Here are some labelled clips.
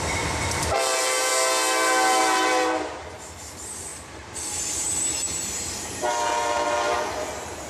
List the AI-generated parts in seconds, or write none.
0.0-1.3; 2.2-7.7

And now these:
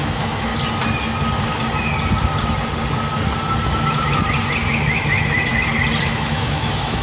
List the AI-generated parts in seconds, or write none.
0.0-0.5; 4.7-5.5; 6.0-7.0

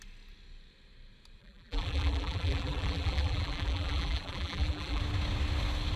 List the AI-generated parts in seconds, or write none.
1.4-5.0